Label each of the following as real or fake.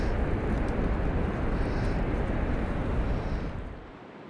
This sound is real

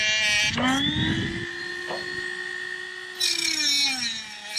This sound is real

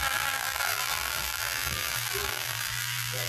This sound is fake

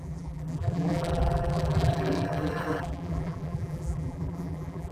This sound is fake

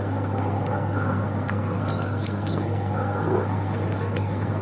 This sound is fake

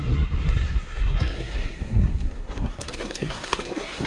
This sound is fake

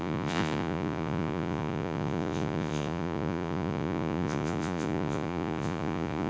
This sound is fake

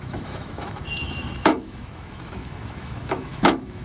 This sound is fake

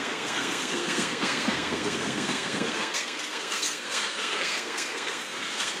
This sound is fake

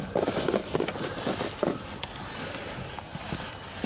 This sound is real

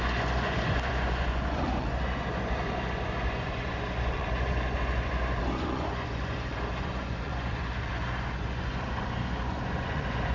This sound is fake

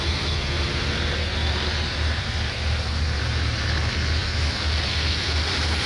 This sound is real